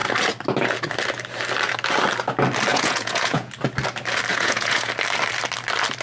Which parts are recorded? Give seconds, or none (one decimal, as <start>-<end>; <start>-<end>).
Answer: 0.0-2.7; 3.5-4.3; 4.9-6.0